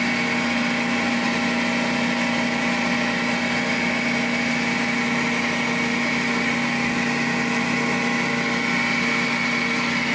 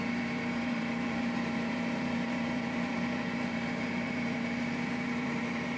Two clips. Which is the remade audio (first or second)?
second